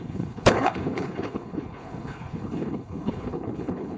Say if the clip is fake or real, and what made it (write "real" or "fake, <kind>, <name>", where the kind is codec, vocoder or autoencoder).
fake, codec, HILCodec